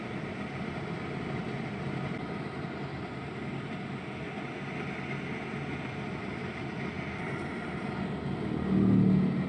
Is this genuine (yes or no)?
yes